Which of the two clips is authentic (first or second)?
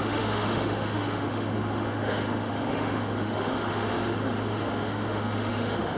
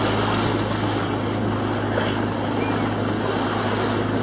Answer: second